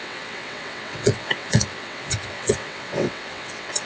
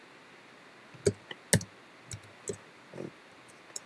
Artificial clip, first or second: first